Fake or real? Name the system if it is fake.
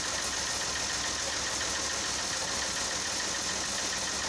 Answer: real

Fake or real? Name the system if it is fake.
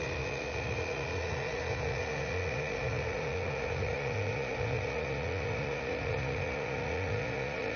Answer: fake, vocoder, Vocos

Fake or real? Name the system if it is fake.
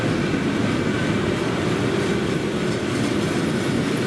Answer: real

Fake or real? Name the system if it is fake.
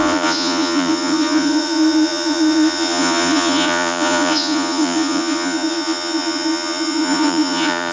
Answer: fake, vocoder, Vocos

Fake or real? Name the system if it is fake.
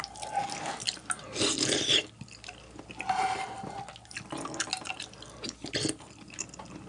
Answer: real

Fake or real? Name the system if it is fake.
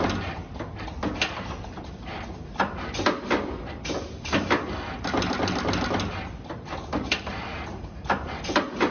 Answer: real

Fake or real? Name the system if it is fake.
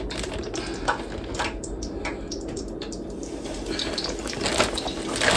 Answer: real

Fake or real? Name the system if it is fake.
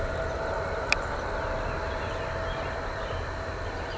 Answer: real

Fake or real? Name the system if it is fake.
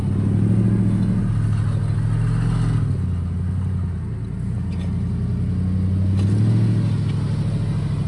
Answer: real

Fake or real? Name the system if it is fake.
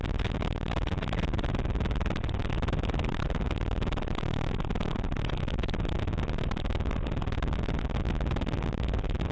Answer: real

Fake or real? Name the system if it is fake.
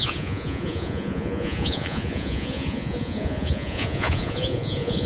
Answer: fake, vocoder, Vocos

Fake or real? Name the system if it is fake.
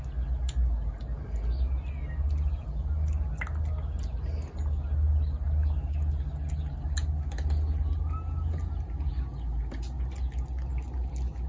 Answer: real